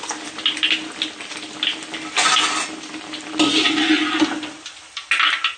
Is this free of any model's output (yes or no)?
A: yes